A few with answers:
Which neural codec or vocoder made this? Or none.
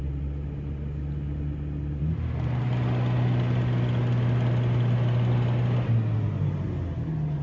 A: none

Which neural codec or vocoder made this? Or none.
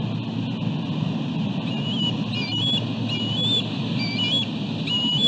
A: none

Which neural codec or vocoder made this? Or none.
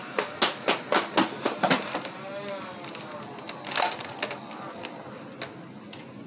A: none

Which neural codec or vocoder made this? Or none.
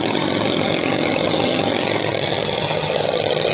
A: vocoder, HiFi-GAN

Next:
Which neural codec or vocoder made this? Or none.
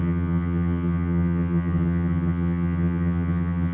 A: vocoder, HiFi-GAN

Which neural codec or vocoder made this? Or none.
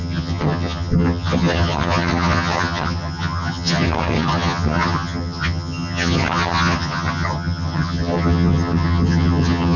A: vocoder, HiFi-GAN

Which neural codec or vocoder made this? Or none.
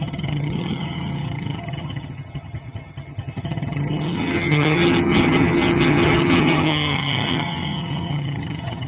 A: vocoder, HiFi-GAN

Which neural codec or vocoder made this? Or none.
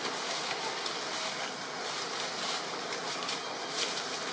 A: none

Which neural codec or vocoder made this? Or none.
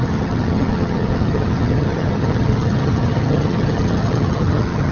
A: vocoder, HiFi-GAN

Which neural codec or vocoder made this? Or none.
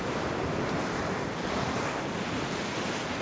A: none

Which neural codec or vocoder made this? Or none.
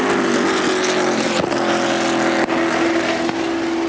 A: none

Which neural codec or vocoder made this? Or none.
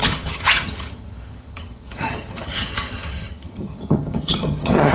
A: vocoder, HiFi-GAN